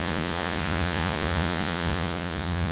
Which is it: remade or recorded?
remade